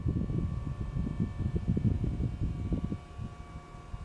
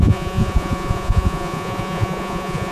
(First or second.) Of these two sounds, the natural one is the first